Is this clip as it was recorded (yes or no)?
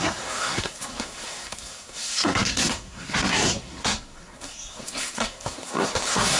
no